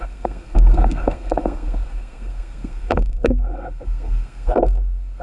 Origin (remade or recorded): remade